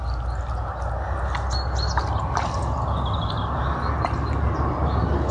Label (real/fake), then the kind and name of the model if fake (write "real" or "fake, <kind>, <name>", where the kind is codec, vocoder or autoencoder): real